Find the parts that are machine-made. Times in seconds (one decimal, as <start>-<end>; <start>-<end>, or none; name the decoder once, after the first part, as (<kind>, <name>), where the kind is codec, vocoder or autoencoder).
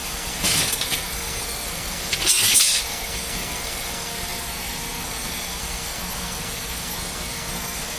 0.0-8.0 (codec, SNAC)